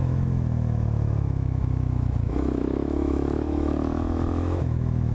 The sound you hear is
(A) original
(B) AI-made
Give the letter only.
B